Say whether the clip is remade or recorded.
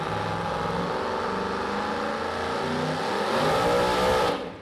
recorded